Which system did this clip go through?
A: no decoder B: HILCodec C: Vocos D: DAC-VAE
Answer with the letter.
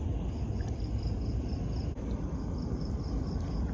A